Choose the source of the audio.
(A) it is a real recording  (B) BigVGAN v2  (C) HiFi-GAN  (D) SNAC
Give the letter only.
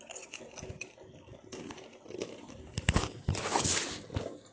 A